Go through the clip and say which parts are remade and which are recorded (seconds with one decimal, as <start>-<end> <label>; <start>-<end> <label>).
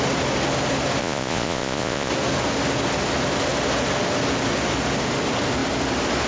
0.0-1.0 recorded; 1.0-2.1 remade; 2.1-6.3 recorded